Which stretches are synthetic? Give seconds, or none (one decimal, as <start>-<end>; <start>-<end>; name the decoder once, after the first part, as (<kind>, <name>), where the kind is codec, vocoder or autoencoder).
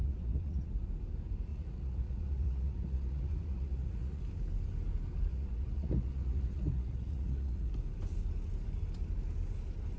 0.0-0.9 (vocoder, Vocos); 1.5-4.2; 5.3-7.7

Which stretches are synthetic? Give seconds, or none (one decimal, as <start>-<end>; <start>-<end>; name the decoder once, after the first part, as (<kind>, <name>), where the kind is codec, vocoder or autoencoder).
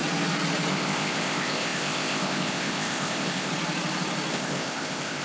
0.7-3.5 (codec, ZipCodec); 4.3-5.2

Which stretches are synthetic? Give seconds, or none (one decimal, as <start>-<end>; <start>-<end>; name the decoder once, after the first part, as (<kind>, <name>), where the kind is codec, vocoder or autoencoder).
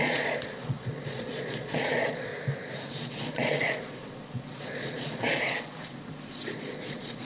0.0-2.3 (vocoder, Vocos); 2.9-7.3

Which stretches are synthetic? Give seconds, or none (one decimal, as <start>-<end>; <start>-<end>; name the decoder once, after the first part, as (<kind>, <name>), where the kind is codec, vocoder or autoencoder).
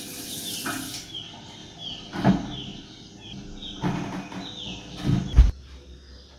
none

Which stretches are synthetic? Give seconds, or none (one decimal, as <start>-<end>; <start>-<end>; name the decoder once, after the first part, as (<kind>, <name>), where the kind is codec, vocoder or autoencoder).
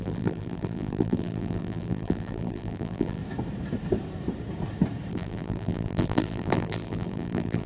0.0-3.2 (vocoder, BigVGAN v2); 5.1-7.7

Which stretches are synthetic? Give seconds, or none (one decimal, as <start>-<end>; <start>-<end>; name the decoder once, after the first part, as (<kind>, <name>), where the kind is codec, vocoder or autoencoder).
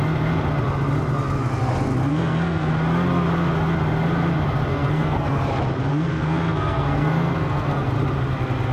2.1-2.7 (codec, SNAC); 4.7-5.4; 5.9-7.9